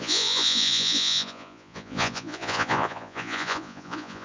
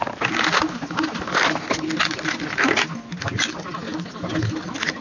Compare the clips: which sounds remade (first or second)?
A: first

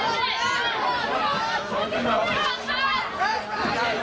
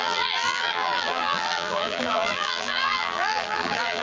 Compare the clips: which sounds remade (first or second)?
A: second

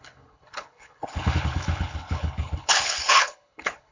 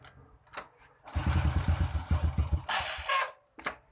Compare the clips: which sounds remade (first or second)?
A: first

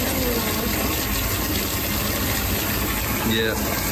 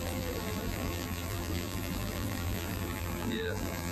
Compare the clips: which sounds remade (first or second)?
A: second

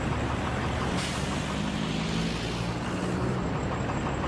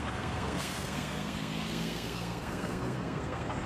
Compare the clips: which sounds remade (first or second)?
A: second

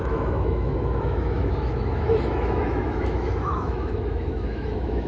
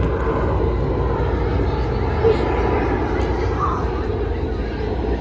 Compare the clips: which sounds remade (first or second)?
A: first